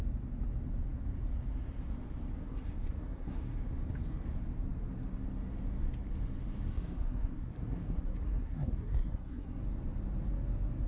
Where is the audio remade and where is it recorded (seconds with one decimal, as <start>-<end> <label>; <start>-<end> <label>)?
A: 0.0-2.4 recorded; 2.4-3.4 remade; 3.4-6.7 recorded; 6.7-9.6 remade; 9.6-10.9 recorded